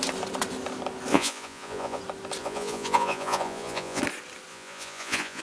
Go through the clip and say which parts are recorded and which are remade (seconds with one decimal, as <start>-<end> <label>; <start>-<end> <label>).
0.0-1.1 recorded; 1.1-2.0 remade; 2.0-2.4 recorded; 2.4-4.0 remade; 4.0-4.5 recorded; 4.5-5.4 remade